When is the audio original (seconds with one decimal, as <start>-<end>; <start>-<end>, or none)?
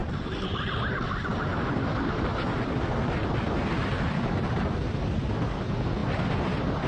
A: 0.0-6.9